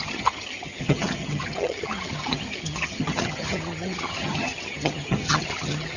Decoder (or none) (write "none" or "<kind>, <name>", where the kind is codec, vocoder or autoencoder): vocoder, HiFi-GAN